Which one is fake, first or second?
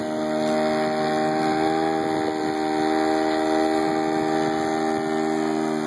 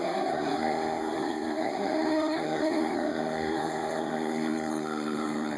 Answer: second